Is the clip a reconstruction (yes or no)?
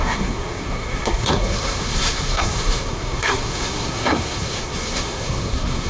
yes